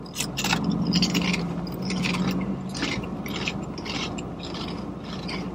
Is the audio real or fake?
real